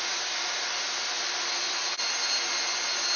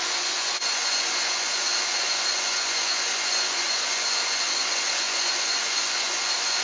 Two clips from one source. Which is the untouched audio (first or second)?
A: first